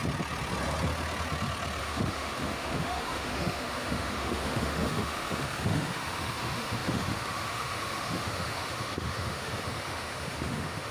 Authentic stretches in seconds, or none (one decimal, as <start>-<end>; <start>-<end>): 0.0-1.8